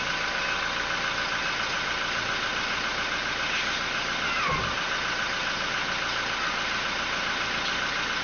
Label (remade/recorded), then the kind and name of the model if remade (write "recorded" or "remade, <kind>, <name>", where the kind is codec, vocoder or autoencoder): recorded